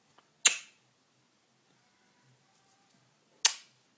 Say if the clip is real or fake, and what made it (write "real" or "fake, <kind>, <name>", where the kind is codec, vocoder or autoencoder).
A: real